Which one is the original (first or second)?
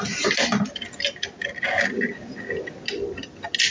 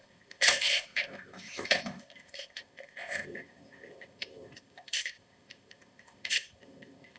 first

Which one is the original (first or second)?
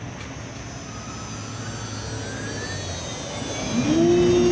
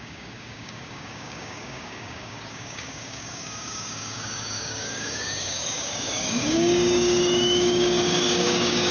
first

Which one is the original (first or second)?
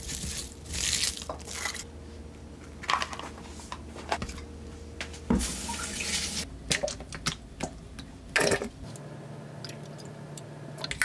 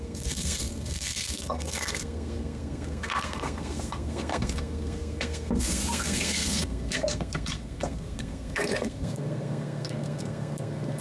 first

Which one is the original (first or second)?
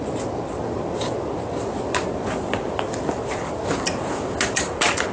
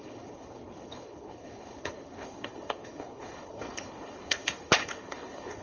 first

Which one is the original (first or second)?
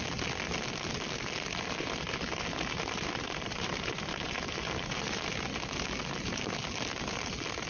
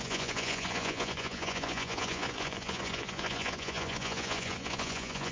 first